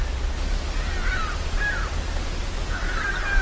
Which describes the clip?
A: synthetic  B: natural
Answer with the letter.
B